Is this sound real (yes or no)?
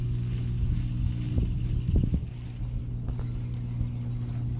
yes